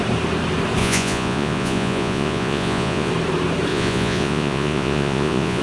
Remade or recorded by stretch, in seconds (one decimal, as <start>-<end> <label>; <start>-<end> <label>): 0.0-0.8 recorded; 0.8-3.1 remade; 3.1-3.7 recorded; 3.7-5.6 remade